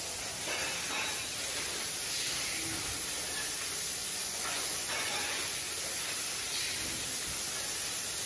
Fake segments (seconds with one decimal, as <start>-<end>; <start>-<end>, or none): 4.0-5.7